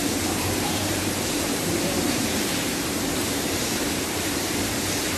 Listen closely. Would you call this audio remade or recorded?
remade